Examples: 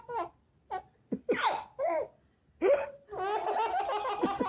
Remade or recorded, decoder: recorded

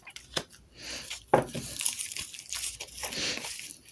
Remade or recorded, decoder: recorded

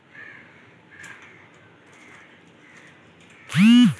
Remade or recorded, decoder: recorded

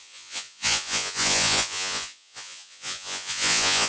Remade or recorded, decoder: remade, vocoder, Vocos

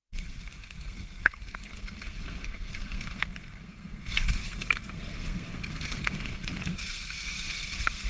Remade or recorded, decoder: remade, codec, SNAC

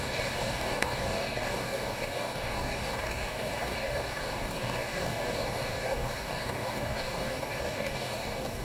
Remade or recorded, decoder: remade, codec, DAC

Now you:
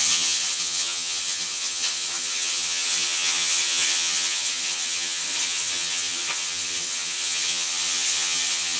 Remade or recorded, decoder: remade, vocoder, HiFi-GAN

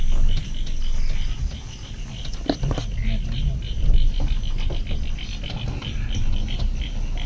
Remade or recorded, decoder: recorded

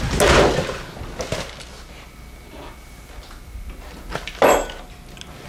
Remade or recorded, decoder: recorded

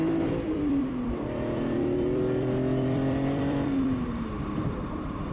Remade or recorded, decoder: remade, vocoder, BigVGAN v2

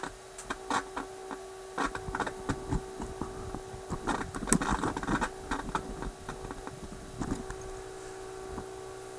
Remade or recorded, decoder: recorded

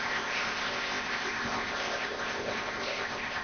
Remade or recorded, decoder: remade, codec, ZipCodec